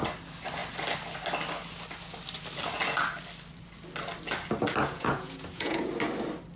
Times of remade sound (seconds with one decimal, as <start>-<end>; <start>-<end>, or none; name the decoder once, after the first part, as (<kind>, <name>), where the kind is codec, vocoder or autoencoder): 4.8-5.9 (vocoder, Vocos)